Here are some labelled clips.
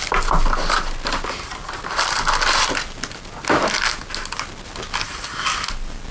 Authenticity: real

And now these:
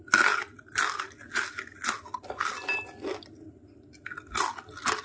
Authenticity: real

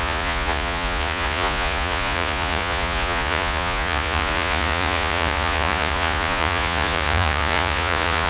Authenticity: fake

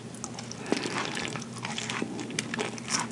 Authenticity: real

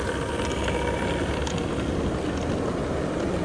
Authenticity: real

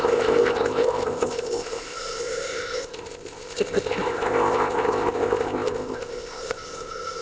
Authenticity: fake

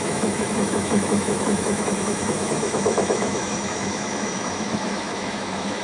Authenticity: fake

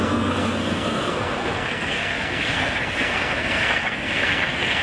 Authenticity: fake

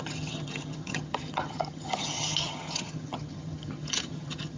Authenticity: fake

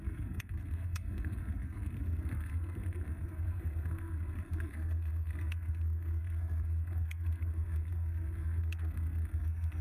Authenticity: fake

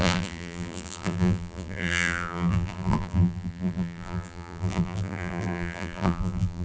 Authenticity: fake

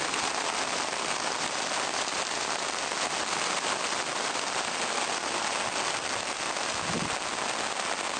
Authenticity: real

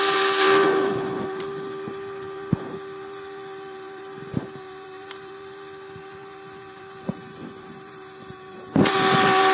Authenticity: fake